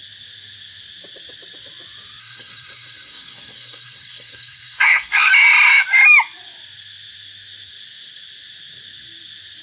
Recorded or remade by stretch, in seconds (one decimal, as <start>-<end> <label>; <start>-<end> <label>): 0.0-2.2 recorded; 2.2-5.3 remade; 5.3-9.6 recorded